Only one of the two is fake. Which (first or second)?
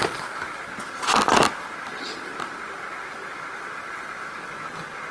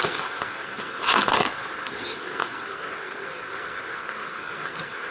second